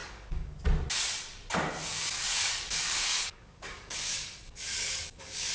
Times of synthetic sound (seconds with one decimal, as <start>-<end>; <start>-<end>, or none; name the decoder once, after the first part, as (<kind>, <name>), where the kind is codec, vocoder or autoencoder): 0.0-0.6 (codec, DAC); 1.9-5.5